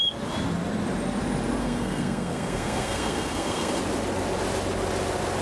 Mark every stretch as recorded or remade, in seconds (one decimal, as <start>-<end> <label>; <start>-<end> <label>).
0.0-1.6 recorded; 1.6-3.8 remade; 3.8-5.4 recorded